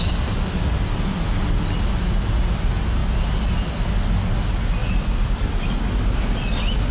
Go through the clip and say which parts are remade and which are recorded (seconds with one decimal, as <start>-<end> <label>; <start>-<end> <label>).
0.0-6.9 recorded